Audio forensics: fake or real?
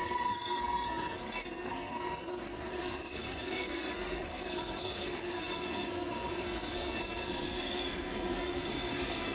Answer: fake